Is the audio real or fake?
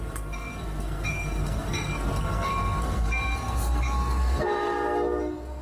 fake